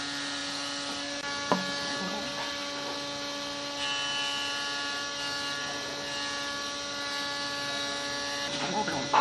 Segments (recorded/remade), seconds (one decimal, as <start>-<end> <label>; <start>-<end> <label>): 0.0-9.2 recorded